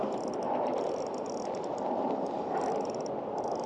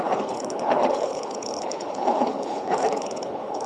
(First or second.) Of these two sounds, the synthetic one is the second